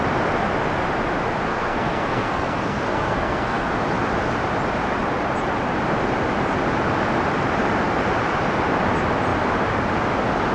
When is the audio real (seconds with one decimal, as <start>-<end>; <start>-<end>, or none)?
0.0-1.5; 3.7-10.5